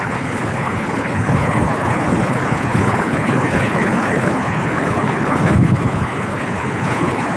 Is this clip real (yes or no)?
no